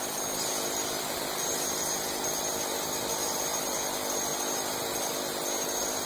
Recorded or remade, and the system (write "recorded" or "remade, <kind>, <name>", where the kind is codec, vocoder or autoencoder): recorded